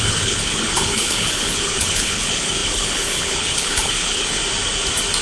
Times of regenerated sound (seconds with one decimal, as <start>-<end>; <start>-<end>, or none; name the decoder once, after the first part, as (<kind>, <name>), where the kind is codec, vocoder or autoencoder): 0.0-4.4 (codec, HILCodec)